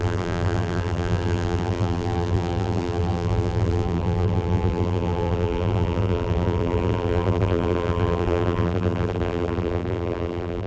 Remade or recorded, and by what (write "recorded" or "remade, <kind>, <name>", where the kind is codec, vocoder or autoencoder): remade, vocoder, BigVGAN v2